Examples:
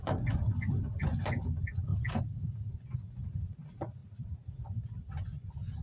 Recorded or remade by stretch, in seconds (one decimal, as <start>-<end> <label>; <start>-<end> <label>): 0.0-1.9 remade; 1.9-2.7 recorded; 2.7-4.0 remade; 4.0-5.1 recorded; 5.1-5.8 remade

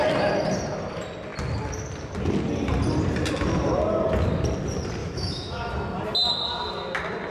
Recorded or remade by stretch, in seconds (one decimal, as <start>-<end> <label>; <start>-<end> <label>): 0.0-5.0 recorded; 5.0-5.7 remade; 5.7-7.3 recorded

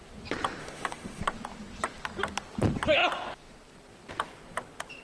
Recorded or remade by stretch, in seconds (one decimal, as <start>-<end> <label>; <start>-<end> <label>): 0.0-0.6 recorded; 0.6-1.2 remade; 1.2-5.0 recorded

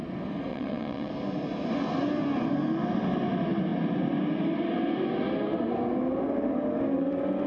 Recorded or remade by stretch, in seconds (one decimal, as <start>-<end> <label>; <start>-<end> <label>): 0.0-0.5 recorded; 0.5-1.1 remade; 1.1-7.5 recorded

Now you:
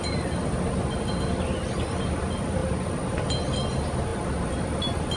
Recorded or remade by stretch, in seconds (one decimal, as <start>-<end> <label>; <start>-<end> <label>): 0.0-5.2 recorded

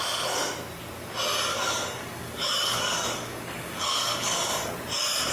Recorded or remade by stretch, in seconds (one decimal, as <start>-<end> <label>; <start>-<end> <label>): 0.0-1.5 recorded; 1.5-4.7 remade; 4.7-5.3 recorded